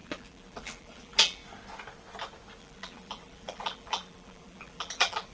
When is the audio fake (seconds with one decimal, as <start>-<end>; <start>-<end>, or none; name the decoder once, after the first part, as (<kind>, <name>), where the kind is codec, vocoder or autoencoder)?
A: 0.0-1.4 (vocoder, BigVGAN v2); 2.6-5.3